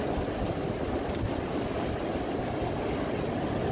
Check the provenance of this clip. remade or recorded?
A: recorded